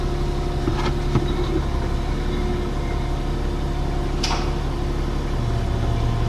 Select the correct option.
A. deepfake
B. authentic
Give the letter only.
B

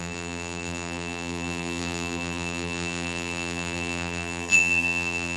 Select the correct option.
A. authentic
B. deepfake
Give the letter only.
B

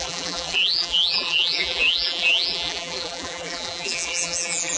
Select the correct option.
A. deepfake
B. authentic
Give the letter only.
A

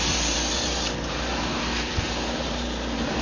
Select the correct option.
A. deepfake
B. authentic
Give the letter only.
A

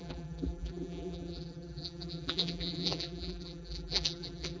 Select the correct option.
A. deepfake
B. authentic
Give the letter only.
A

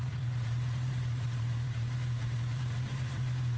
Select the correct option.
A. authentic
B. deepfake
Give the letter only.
B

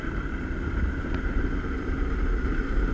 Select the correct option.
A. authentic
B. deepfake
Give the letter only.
B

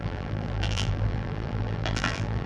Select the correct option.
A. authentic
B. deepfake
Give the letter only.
B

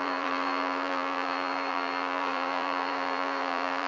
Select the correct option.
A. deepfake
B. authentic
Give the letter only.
A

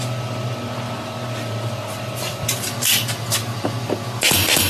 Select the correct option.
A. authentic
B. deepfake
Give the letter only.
A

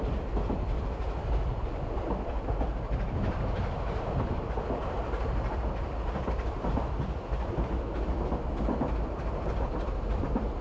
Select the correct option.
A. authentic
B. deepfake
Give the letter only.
B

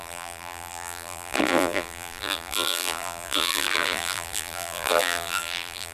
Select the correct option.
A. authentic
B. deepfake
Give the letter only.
B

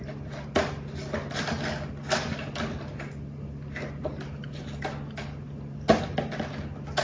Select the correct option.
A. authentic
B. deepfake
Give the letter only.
A